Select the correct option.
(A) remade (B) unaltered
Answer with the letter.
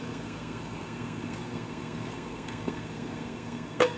A